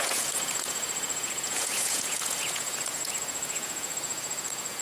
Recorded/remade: remade